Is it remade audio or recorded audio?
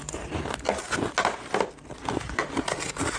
recorded